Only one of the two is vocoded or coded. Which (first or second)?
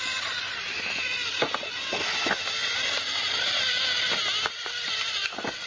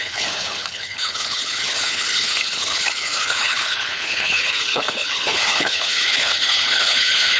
second